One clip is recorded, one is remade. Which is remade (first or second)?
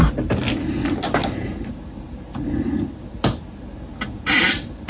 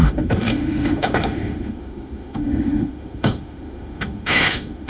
second